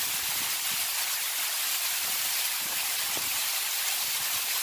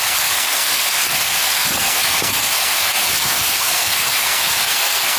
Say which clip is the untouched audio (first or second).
first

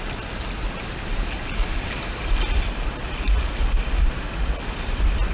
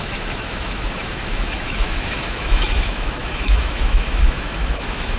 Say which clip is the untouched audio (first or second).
first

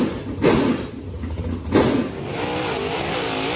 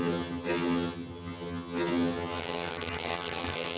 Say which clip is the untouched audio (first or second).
first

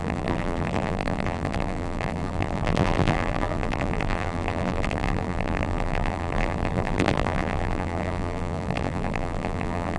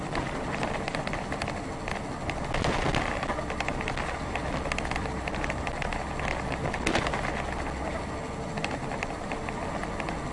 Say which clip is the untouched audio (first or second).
second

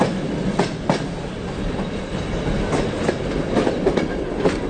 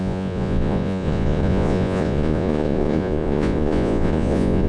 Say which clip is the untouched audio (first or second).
first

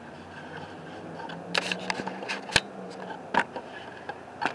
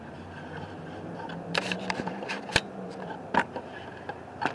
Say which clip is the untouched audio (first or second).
first